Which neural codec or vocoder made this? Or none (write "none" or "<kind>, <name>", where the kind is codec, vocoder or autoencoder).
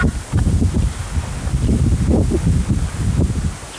none